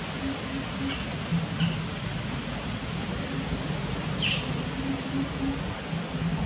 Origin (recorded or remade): recorded